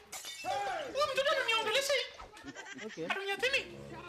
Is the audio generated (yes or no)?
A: no